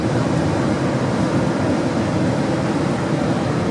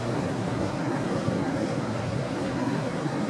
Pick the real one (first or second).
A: first